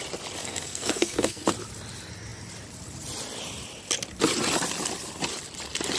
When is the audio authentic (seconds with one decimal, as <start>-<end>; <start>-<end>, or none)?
0.0-0.4; 1.5-6.0